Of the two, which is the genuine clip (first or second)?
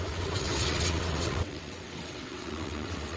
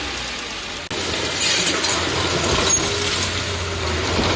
second